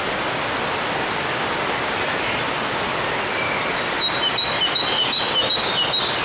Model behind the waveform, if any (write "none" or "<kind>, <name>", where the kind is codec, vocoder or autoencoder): none